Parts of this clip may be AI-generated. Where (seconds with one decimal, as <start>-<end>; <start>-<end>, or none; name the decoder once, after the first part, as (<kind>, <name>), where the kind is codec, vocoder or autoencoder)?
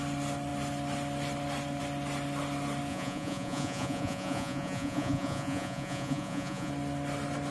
2.9-6.7 (vocoder, Vocos)